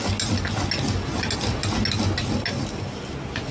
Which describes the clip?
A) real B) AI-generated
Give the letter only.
A